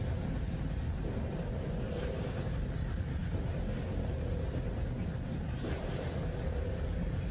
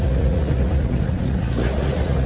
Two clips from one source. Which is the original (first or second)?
first